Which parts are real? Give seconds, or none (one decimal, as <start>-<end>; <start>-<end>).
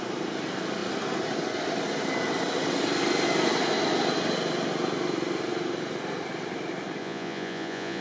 0.0-7.0